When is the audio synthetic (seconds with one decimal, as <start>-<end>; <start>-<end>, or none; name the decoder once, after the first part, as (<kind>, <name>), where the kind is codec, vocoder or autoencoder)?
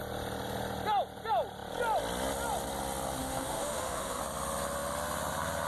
3.2-4.2 (autoencoder, DAC-VAE)